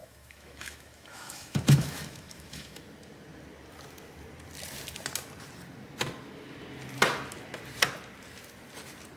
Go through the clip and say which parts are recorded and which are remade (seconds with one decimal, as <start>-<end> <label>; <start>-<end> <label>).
0.0-2.8 remade; 2.8-9.2 recorded